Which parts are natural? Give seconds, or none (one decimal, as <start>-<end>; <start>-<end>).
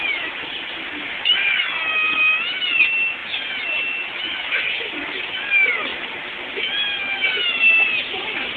0.0-8.6